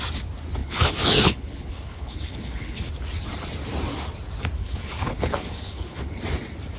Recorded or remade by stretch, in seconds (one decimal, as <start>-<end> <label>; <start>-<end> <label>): 0.0-0.6 recorded; 0.6-2.9 remade; 2.9-4.6 recorded; 4.6-6.2 remade; 6.2-6.8 recorded